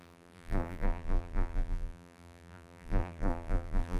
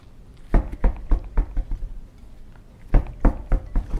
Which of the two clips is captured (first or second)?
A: second